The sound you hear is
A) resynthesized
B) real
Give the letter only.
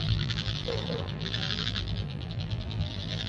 A